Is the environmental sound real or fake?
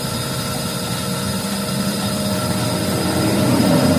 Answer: real